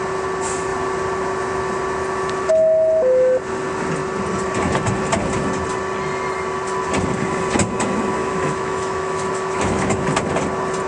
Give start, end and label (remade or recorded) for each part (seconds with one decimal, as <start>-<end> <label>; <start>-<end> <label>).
0.0-8.2 recorded; 8.2-9.9 remade; 9.9-10.9 recorded